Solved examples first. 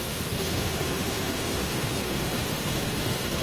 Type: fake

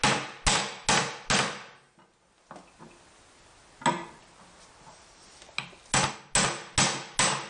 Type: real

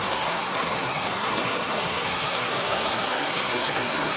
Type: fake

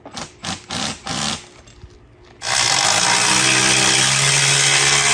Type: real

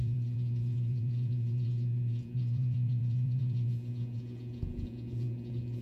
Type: fake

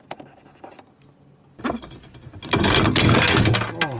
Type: real